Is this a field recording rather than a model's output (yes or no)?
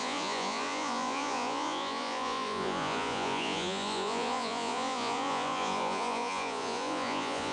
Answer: no